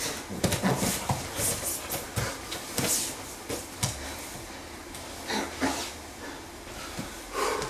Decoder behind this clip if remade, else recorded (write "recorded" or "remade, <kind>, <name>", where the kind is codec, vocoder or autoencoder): recorded